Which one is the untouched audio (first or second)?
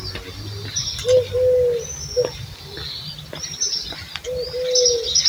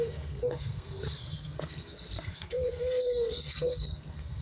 first